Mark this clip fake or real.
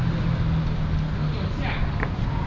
real